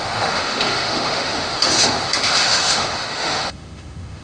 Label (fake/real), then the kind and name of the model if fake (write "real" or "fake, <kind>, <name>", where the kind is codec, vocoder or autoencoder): fake, autoencoder, DAC-VAE